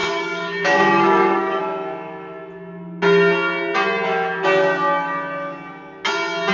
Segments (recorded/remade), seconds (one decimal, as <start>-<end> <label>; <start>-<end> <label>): 0.0-1.6 remade; 1.6-6.5 recorded